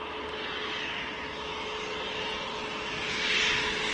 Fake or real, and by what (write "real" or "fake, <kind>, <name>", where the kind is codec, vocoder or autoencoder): real